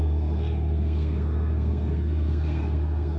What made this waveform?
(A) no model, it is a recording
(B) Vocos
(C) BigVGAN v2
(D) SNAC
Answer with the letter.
D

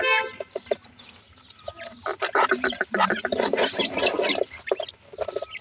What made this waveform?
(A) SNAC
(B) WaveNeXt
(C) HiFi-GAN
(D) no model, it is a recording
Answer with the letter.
D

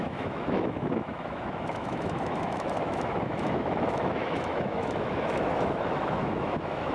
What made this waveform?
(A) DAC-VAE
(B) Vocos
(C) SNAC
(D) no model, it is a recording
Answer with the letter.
A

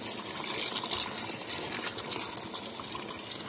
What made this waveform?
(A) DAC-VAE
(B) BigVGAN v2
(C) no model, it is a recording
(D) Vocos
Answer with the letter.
C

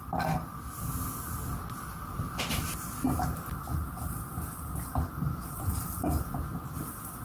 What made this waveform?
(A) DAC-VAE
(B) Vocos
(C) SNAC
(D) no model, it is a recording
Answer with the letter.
D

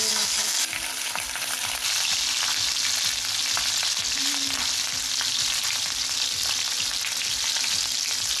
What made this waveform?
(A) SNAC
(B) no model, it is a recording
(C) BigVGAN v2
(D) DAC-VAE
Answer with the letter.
B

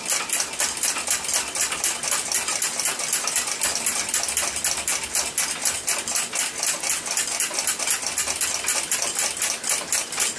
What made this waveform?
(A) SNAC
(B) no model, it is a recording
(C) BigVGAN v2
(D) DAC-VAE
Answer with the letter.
B